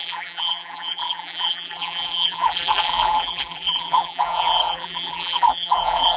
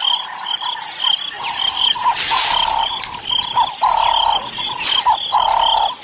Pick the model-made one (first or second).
first